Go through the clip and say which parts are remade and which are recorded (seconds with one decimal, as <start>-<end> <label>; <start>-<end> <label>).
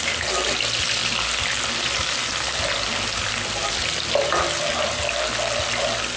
0.0-6.2 recorded